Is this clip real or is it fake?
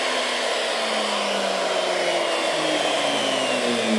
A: real